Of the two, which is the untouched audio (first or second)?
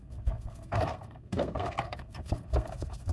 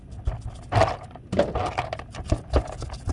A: second